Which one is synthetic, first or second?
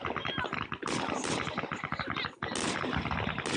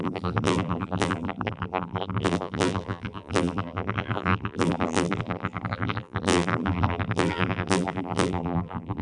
second